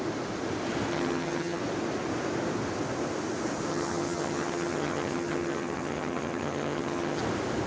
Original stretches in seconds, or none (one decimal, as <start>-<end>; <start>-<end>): 0.0-0.9; 1.6-3.7; 7.2-7.7